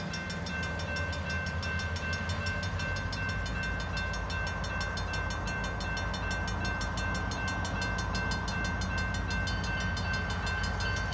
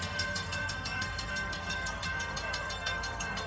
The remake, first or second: second